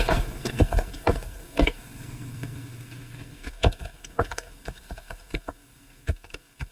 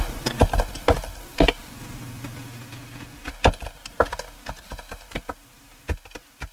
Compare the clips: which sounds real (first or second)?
second